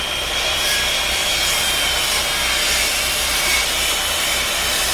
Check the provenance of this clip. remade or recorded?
remade